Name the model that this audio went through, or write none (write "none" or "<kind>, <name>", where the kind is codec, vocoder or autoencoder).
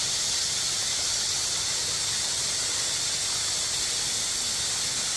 none